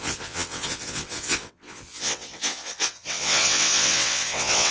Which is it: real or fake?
fake